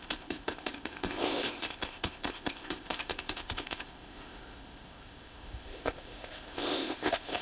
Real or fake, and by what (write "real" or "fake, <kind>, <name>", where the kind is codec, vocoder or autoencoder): fake, codec, ZipCodec